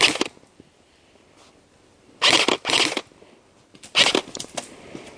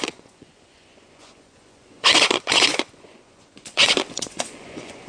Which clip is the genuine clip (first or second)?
first